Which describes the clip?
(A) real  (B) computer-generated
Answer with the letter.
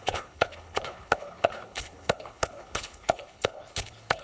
B